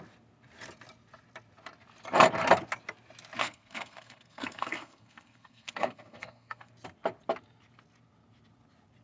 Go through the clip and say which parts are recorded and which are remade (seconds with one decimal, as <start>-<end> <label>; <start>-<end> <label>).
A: 0.0-3.4 recorded; 3.4-6.7 remade; 6.7-9.0 recorded